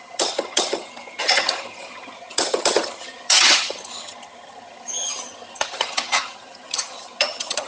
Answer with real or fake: fake